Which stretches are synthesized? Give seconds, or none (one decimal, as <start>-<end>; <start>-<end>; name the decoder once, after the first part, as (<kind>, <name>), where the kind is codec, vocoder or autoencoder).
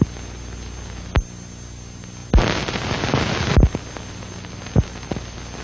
none